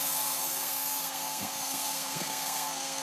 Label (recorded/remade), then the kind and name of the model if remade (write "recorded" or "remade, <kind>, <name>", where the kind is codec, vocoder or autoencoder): remade, codec, SNAC